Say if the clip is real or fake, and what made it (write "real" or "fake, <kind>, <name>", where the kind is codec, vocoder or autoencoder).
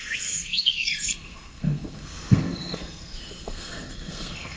fake, codec, SNAC